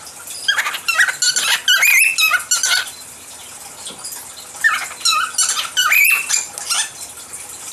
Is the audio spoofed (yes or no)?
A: no